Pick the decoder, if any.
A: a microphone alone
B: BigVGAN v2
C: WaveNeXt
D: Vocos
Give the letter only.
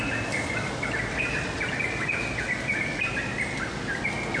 A